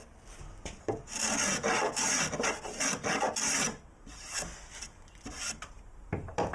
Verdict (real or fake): real